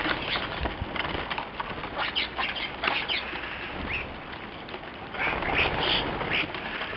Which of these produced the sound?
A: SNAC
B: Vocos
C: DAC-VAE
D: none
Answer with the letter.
D